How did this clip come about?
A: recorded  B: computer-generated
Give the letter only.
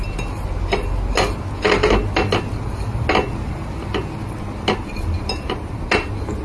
A